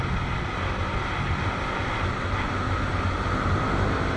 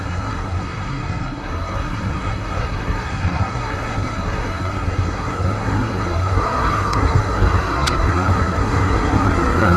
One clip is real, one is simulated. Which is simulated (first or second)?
second